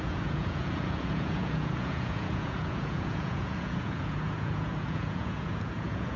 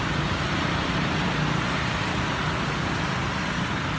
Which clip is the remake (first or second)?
first